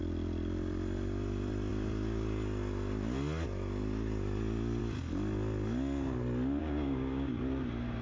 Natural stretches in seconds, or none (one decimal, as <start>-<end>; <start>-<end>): 0.0-6.6; 7.3-8.0